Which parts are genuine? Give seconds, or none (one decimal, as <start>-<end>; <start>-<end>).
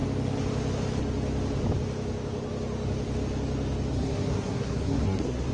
0.0-3.9